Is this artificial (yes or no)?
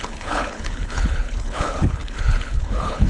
yes